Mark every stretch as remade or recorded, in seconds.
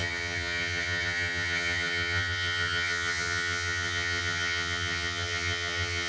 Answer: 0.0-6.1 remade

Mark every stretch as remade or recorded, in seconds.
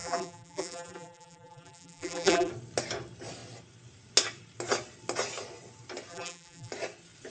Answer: 0.0-2.5 remade; 2.5-6.1 recorded; 6.1-6.7 remade; 6.7-7.3 recorded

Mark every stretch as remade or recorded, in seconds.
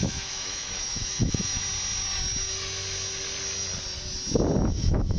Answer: 0.0-1.6 remade; 1.6-4.7 recorded; 4.7-5.2 remade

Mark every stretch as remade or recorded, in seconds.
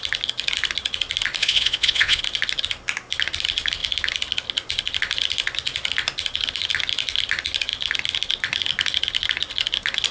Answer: 0.0-1.4 recorded; 1.4-2.2 remade; 2.2-10.1 recorded